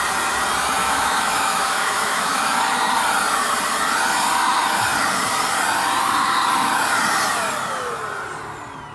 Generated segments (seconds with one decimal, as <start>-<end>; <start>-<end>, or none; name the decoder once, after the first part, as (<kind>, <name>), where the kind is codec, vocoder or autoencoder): 0.8-2.6 (autoencoder, DAC-VAE)